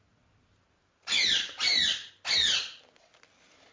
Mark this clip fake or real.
real